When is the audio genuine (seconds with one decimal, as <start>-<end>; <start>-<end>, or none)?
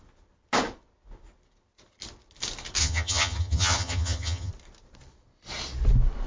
0.0-2.8; 4.5-6.3